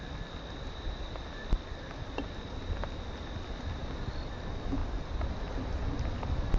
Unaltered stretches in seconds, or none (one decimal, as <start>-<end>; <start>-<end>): 0.0-6.6